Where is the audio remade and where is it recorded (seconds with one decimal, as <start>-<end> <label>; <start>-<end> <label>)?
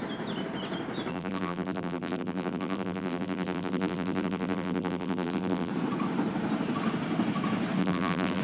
0.0-1.1 recorded; 1.1-5.7 remade; 5.7-7.8 recorded; 7.8-8.4 remade